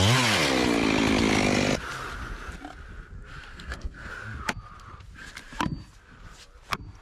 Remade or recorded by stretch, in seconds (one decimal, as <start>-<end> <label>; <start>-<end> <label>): 0.0-3.5 recorded; 3.5-4.1 remade; 4.1-7.0 recorded